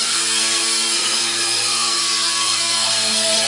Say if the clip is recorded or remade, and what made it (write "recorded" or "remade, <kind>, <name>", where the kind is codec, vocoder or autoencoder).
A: remade, codec, SNAC